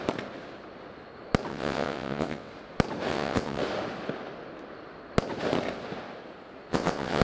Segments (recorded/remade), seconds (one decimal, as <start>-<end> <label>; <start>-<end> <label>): 0.0-1.5 recorded; 1.5-2.5 remade; 2.5-3.1 recorded; 3.1-3.6 remade; 3.6-6.7 recorded; 6.7-7.2 remade